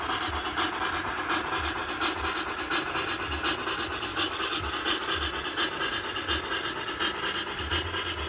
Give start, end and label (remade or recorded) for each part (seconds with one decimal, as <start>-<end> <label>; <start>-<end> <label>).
0.0-4.1 recorded; 4.1-4.7 remade; 4.7-8.3 recorded